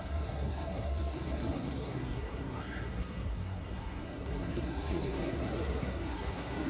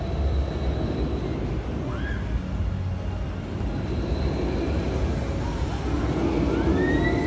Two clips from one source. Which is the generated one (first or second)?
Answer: first